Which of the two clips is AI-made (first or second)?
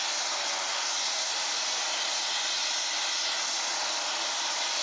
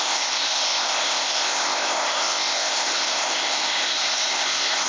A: second